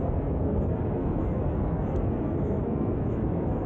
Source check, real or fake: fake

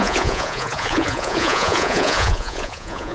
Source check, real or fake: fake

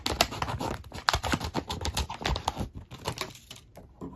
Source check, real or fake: real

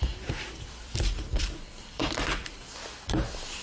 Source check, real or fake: fake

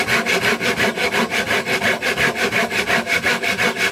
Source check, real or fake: real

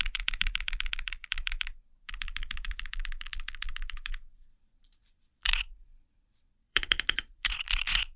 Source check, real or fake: fake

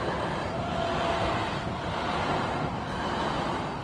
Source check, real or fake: real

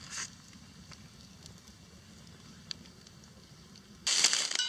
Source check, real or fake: real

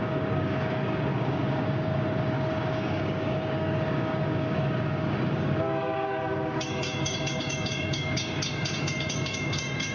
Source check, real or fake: fake